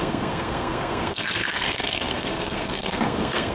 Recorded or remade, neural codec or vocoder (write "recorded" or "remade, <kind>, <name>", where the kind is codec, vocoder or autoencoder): remade, codec, SNAC